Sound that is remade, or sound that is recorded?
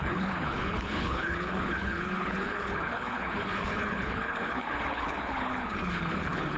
remade